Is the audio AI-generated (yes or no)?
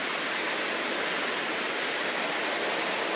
no